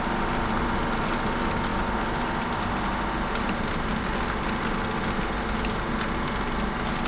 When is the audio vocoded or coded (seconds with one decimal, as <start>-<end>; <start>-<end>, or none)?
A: none